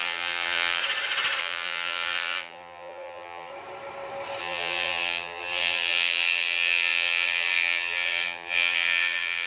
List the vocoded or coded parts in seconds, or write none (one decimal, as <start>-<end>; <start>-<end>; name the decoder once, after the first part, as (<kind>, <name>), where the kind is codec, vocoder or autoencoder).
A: 0.0-0.8 (vocoder, BigVGAN v2); 1.4-3.5; 4.4-9.5